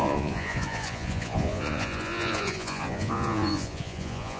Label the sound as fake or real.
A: fake